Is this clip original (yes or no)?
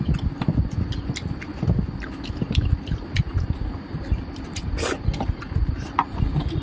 yes